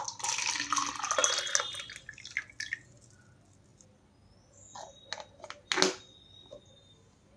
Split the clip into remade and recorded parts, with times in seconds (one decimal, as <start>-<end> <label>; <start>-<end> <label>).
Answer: 0.0-7.4 recorded